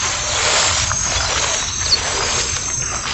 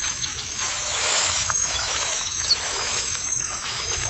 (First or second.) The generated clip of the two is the second